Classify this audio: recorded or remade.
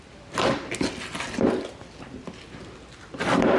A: recorded